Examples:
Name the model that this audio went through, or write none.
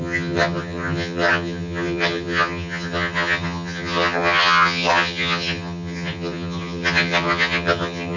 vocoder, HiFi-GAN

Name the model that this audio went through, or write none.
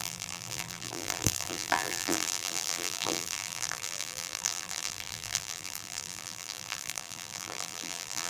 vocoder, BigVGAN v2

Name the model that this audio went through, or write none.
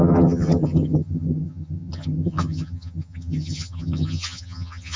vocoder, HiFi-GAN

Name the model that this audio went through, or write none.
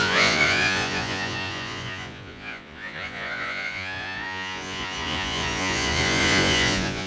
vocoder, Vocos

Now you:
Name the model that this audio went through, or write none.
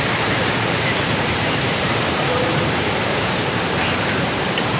vocoder, BigVGAN v2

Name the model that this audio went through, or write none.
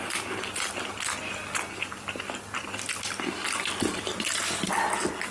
none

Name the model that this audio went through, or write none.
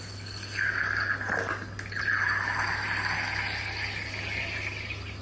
none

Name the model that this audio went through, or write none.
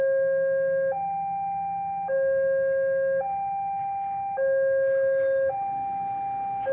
none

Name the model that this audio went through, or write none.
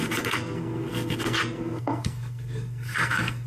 codec, SNAC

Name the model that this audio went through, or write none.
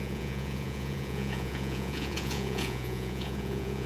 vocoder, Vocos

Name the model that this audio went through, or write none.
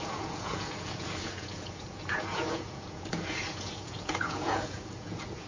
vocoder, Vocos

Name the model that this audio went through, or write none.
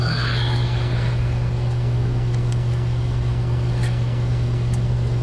codec, SNAC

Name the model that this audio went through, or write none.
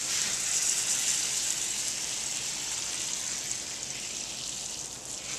none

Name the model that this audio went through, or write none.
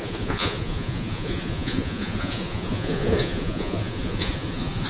vocoder, Vocos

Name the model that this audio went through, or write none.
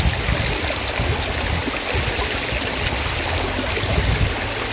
none